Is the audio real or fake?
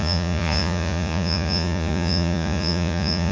fake